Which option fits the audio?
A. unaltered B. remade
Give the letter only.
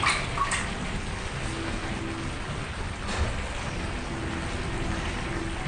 A